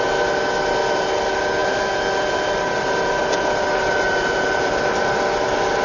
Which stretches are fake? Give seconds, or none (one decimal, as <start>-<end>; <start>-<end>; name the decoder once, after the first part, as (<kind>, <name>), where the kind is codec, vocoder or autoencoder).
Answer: none